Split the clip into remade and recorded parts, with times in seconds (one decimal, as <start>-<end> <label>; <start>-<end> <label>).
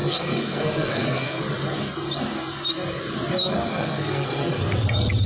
0.0-1.4 remade; 1.4-3.4 recorded; 3.4-4.6 remade; 4.6-5.3 recorded